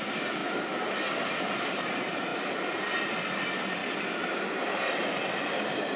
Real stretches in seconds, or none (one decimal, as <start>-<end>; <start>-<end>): 0.0-6.0